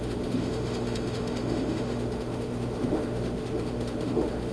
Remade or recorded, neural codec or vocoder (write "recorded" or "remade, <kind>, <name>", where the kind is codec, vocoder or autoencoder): remade, autoencoder, DAC-VAE